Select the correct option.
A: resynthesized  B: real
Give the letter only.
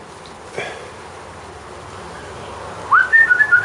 B